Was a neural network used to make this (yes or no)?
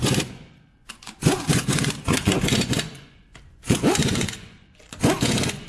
yes